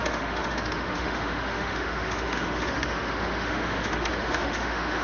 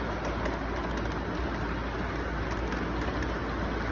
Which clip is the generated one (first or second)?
first